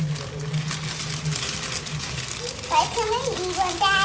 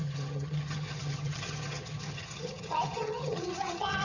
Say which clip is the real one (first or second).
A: first